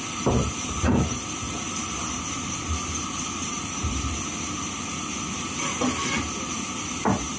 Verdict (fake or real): real